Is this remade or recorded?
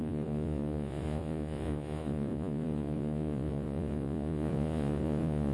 remade